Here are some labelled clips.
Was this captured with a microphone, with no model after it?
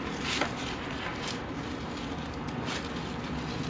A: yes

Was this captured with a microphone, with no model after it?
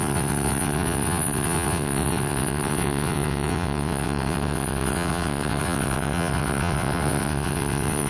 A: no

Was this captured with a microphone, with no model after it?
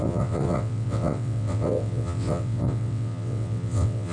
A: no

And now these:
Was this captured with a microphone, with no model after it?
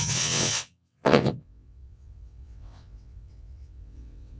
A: no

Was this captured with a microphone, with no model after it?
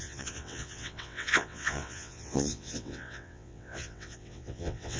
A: no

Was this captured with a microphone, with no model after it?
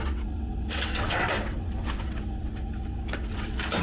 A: no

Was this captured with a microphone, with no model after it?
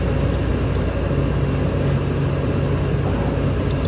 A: yes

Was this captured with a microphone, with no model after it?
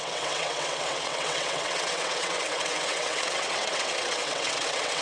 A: no